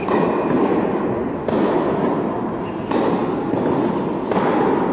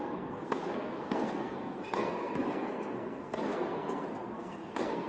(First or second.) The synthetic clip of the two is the second